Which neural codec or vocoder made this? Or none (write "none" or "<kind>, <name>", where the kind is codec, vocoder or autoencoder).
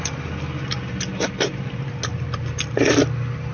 none